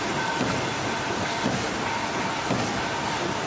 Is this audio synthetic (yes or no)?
no